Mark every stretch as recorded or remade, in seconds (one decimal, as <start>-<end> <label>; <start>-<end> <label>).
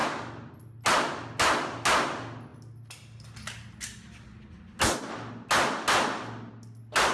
0.0-7.1 recorded